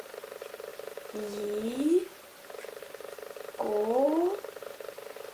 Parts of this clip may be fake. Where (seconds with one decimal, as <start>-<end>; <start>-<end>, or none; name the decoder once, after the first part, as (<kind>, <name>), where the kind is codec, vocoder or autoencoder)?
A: none